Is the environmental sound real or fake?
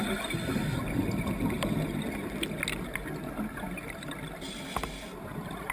real